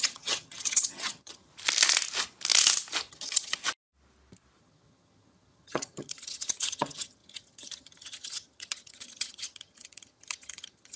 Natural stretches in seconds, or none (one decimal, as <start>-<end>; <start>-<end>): 1.5-3.1; 3.6-4.6